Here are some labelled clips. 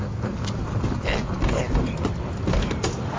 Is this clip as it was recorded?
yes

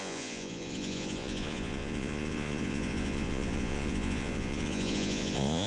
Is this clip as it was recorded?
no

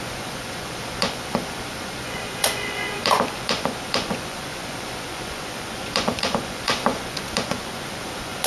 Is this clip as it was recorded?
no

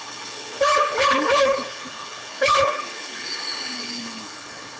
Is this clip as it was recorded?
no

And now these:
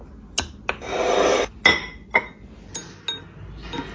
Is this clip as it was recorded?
yes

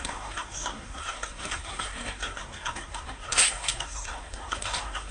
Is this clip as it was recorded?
no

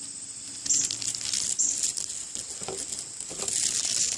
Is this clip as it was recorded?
yes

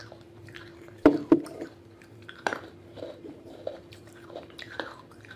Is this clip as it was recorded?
no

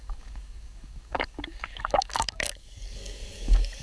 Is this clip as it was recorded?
no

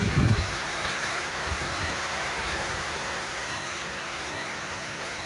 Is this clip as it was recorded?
no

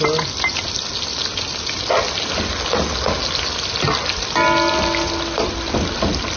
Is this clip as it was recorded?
yes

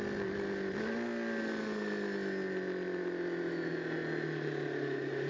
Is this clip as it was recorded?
yes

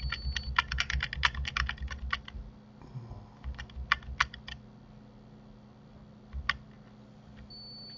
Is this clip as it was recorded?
yes